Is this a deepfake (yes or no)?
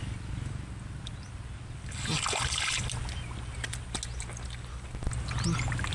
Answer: no